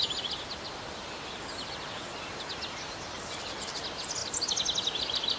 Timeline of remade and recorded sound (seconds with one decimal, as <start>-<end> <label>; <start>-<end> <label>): 0.0-5.4 recorded